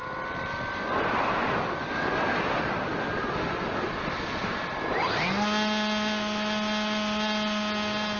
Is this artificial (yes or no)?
no